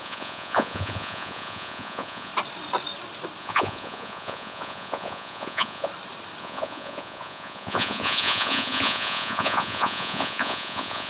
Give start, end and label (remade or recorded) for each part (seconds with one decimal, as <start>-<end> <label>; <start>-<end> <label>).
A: 0.0-2.3 remade; 2.3-3.4 recorded; 3.4-5.9 remade; 5.9-6.4 recorded; 6.4-11.1 remade